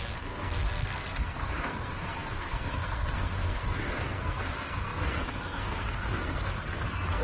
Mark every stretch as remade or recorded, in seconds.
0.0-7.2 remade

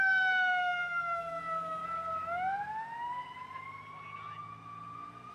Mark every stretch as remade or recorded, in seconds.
0.0-1.8 remade; 1.8-5.3 recorded

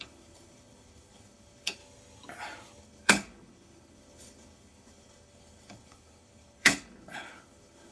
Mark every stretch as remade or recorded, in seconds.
0.0-1.8 remade; 1.8-2.8 recorded; 2.8-7.9 remade

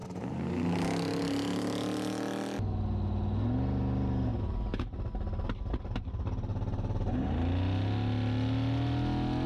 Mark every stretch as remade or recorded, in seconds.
0.0-0.5 remade; 0.5-6.5 recorded; 6.5-7.3 remade; 7.3-9.5 recorded

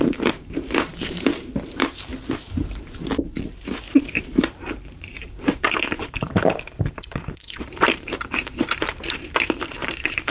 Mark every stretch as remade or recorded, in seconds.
0.0-2.1 remade; 2.1-4.0 recorded; 4.0-10.3 remade

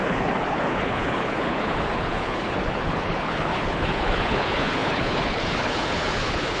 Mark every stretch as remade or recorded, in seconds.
0.0-6.6 remade

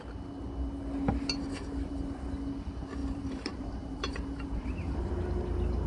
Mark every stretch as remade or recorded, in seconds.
0.0-3.0 recorded; 3.0-5.1 remade; 5.1-5.9 recorded

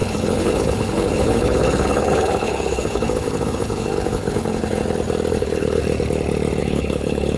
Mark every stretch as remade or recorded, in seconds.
0.0-4.8 remade; 4.8-5.3 recorded; 5.3-5.8 remade; 5.8-6.6 recorded; 6.6-7.4 remade